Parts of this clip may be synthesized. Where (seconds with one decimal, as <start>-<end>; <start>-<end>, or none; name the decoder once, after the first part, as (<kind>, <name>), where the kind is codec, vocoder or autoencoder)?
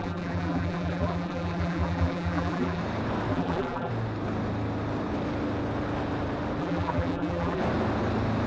0.0-2.8 (vocoder, BigVGAN v2); 3.3-3.9; 6.6-7.6